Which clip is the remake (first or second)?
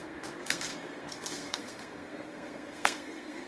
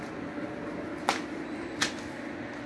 first